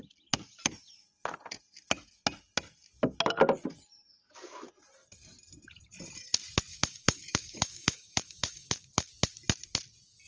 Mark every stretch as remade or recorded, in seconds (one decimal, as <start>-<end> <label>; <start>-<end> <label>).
0.0-6.7 recorded; 6.7-9.1 remade; 9.1-10.3 recorded